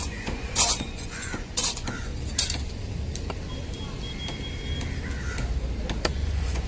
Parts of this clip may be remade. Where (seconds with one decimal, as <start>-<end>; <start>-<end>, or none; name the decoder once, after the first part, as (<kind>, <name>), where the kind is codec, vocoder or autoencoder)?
0.0-2.1 (vocoder, Vocos); 6.1-6.7